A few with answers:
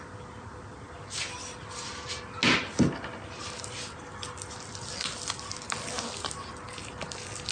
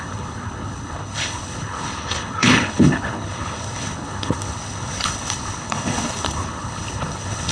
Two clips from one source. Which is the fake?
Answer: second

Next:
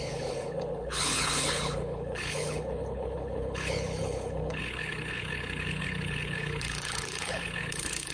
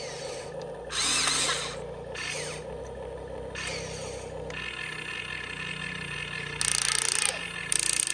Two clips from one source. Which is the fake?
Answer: first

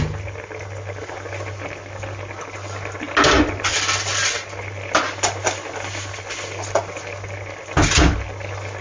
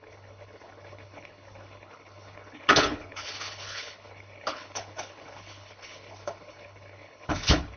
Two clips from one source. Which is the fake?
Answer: second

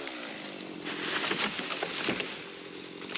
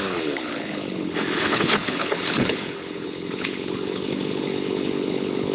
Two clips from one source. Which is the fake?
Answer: second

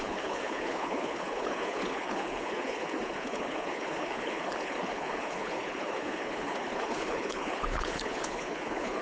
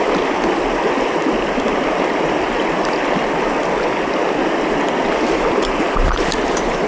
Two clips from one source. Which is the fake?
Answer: first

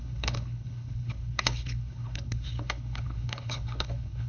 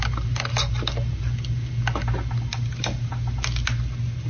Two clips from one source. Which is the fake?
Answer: first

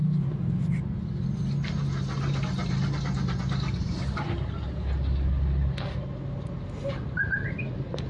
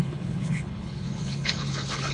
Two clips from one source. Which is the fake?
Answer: second